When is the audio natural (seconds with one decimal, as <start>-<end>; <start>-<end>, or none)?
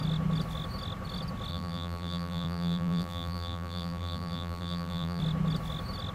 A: 0.0-1.5; 5.2-6.1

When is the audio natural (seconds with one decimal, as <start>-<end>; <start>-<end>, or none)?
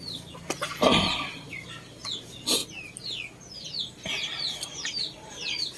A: 2.6-3.8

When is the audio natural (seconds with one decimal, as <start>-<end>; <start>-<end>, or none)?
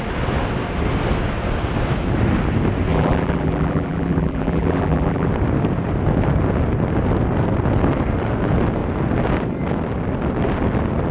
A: 0.0-2.9; 5.3-11.1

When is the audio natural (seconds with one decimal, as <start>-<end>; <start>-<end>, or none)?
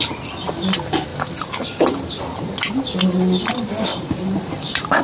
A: 0.0-1.1; 2.2-3.9